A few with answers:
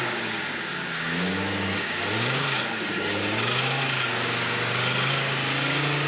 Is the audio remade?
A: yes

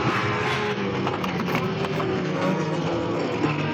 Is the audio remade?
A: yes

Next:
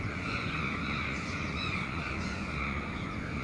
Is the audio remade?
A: yes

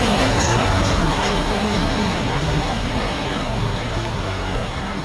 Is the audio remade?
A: yes